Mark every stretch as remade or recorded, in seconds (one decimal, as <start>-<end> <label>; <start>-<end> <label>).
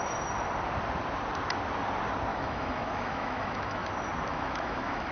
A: 0.0-2.3 recorded; 2.3-3.9 remade; 3.9-4.3 recorded; 4.3-5.1 remade